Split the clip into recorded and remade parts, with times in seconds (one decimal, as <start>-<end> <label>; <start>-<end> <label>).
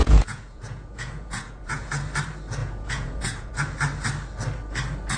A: 0.0-1.9 remade; 1.9-2.6 recorded; 2.6-3.5 remade; 3.5-5.2 recorded